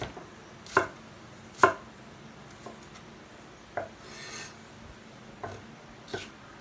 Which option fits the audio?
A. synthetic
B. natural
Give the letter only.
B